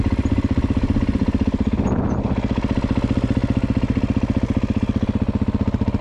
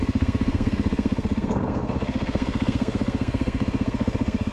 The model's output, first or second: second